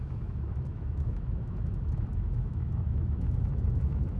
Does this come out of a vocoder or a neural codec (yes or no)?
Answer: yes